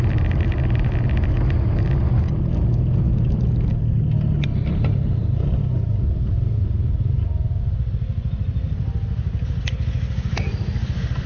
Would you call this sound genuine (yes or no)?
yes